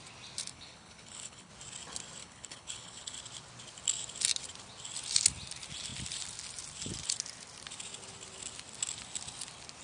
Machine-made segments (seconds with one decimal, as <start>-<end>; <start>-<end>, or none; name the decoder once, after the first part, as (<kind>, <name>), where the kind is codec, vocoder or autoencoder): 0.5-1.5 (codec, HILCodec); 2.2-3.2